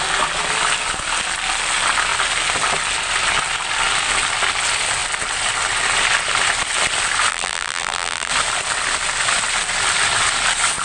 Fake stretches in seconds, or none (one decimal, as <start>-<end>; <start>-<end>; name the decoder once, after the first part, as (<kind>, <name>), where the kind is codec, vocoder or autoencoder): 7.3-8.3 (vocoder, BigVGAN v2)